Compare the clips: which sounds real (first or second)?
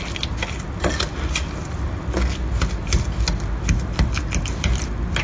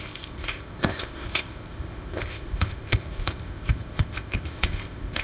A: first